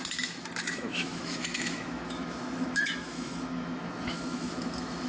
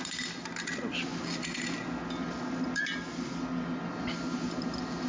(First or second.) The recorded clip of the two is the second